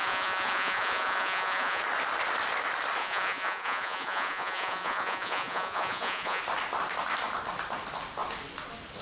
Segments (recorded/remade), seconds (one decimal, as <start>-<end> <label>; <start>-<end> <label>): 0.0-1.8 remade; 1.8-3.0 recorded; 3.0-6.4 remade; 6.4-9.0 recorded